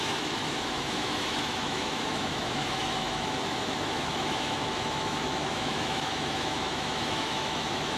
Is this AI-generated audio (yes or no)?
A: yes